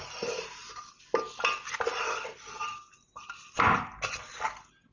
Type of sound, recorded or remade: recorded